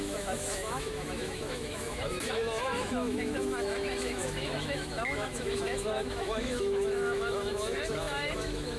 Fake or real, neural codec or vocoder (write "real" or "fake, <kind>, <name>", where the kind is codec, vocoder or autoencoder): fake, autoencoder, DAC-VAE